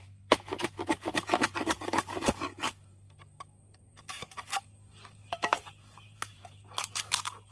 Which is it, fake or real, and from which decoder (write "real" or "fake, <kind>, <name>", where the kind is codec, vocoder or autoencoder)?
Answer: fake, codec, DAC